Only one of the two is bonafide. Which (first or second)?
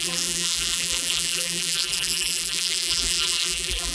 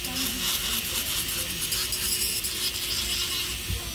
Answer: second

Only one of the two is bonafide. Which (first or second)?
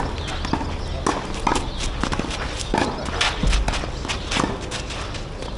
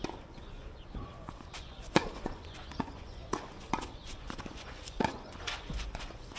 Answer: first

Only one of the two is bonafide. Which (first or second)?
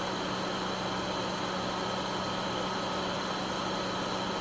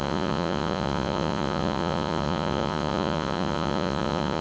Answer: first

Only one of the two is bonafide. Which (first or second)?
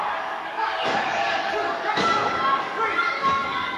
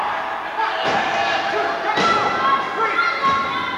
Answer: second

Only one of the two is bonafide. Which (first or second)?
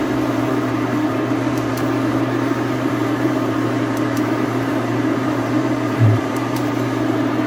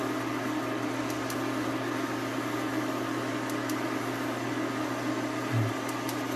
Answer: second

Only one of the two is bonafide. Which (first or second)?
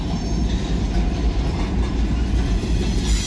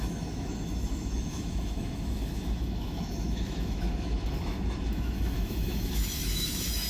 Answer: first